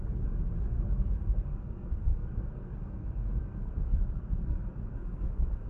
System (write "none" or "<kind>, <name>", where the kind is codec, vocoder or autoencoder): codec, SNAC